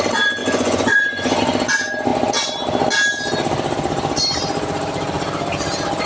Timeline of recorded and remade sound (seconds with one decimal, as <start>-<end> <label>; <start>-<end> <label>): 0.0-0.4 recorded; 0.4-1.4 remade; 1.4-6.1 recorded